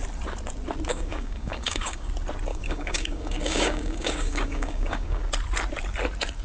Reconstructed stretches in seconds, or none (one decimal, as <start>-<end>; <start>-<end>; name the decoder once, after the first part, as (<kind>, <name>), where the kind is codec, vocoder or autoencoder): 0.9-2.1 (codec, DAC); 2.5-5.2